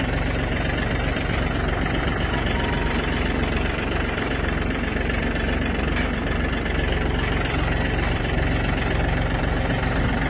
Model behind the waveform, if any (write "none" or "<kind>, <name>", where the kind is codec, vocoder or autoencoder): vocoder, BigVGAN v2